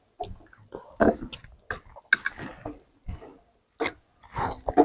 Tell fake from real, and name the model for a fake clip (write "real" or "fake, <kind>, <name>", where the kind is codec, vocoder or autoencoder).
real